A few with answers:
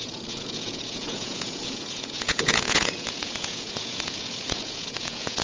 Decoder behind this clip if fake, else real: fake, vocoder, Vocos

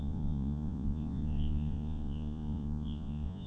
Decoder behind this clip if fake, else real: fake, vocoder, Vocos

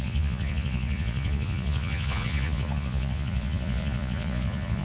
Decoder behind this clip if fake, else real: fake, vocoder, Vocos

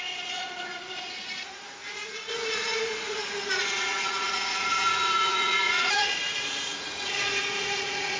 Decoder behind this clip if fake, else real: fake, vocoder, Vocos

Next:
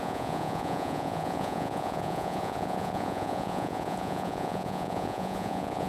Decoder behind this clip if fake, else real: fake, vocoder, Vocos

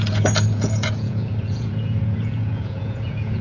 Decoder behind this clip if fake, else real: fake, vocoder, Vocos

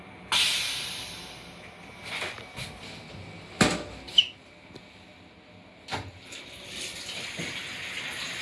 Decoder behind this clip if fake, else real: real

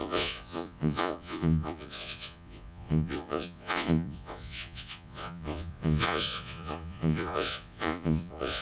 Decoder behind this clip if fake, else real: fake, vocoder, Vocos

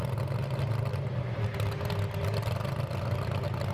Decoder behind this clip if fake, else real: real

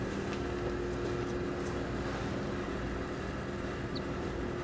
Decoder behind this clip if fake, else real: real